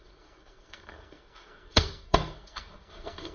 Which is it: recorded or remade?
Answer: remade